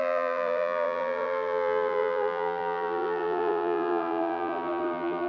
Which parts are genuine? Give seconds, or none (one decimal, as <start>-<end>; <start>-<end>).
none